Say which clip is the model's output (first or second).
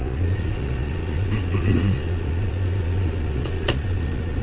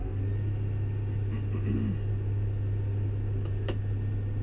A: first